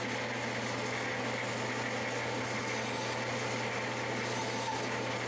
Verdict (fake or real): real